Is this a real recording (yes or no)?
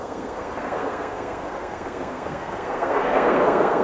no